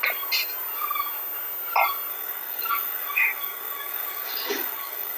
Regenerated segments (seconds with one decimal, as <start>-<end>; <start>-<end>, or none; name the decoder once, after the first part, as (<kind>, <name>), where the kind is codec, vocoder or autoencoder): 2.1-5.2 (codec, DAC)